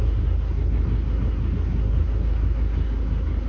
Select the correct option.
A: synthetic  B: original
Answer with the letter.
A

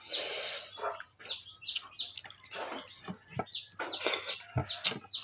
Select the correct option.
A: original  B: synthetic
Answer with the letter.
A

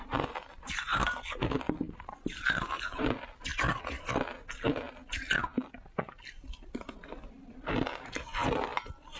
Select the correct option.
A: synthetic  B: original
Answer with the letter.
B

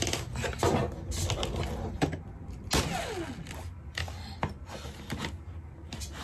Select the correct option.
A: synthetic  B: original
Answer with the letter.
B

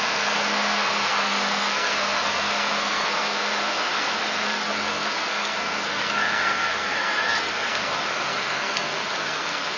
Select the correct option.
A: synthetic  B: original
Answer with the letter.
A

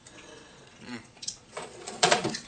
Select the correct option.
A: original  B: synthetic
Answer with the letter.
B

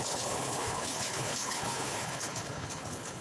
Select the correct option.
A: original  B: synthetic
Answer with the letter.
B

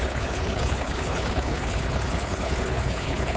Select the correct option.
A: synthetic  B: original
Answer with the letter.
A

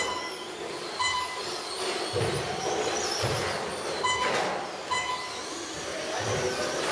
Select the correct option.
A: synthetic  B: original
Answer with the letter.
B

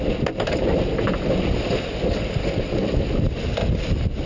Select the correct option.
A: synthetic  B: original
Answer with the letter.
B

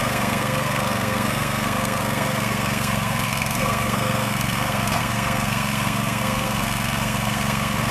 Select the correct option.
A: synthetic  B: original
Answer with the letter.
A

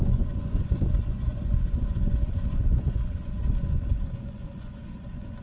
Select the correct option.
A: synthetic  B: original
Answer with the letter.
A